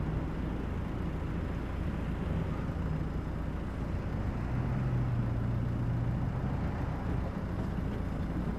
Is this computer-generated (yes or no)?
no